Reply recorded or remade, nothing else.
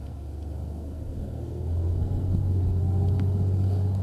remade